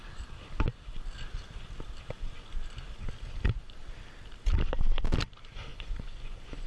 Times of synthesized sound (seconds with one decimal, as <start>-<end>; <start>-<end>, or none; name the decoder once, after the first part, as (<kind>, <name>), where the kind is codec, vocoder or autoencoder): 5.7-6.7 (vocoder, Vocos)